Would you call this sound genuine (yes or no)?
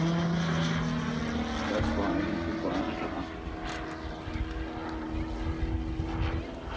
yes